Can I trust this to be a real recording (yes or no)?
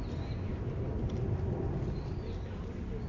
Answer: yes